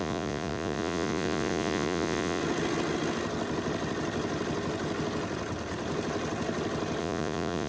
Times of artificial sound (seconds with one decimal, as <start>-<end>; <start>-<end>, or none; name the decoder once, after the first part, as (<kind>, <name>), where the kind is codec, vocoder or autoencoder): 0.0-2.4 (vocoder, Vocos); 7.0-7.7